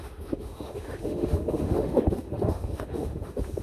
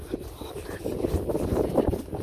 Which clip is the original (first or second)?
second